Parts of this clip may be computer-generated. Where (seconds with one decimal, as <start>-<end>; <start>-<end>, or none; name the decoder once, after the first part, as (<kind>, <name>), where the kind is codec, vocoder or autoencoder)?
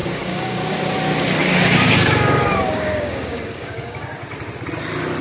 0.0-0.8 (codec, DAC); 1.4-4.0